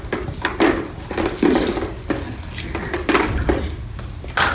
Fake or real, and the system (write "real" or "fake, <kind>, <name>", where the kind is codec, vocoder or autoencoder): real